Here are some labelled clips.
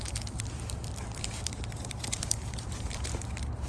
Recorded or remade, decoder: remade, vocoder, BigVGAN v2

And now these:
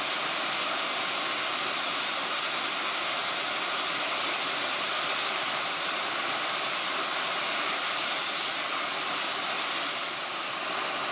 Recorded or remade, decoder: recorded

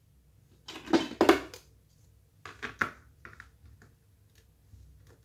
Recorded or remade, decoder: recorded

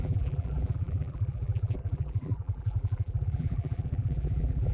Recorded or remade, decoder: remade, vocoder, BigVGAN v2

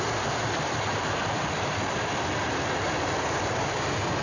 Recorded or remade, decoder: remade, vocoder, BigVGAN v2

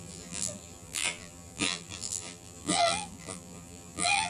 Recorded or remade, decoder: remade, vocoder, BigVGAN v2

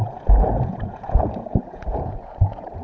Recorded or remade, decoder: remade, vocoder, Vocos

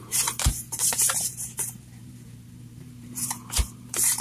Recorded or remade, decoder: remade, vocoder, BigVGAN v2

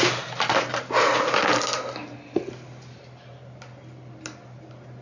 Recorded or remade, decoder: recorded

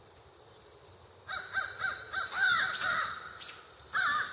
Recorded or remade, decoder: recorded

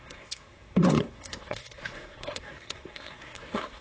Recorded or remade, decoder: remade, codec, SNAC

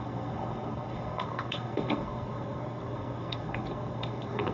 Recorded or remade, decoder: remade, codec, SNAC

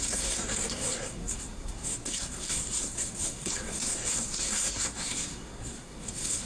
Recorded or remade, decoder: remade, codec, SNAC